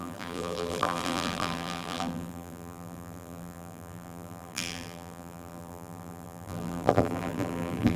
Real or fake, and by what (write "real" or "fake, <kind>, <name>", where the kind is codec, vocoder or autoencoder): fake, vocoder, BigVGAN v2